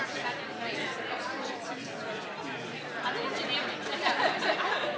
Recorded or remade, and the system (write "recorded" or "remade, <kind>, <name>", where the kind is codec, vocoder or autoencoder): recorded